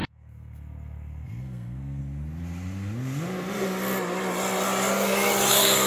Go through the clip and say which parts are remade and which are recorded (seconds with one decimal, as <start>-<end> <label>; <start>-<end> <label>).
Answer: 0.0-2.0 remade; 2.0-5.5 recorded; 5.5-5.9 remade